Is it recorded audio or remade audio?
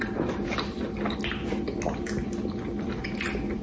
recorded